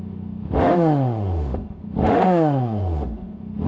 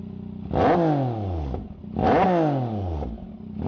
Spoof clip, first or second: first